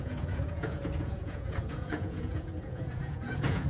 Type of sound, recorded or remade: remade